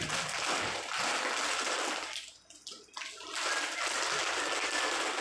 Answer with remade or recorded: recorded